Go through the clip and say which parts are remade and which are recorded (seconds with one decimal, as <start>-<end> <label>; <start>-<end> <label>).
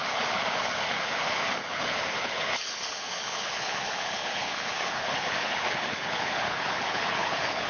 0.0-7.7 remade